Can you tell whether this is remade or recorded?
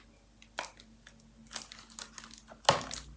recorded